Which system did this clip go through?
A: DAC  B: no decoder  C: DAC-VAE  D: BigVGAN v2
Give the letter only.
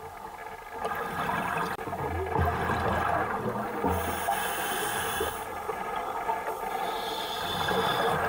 B